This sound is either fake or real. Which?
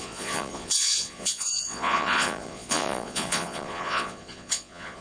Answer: fake